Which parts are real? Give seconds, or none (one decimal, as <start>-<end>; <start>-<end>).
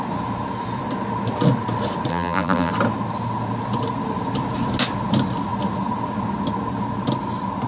0.0-2.1; 2.7-7.7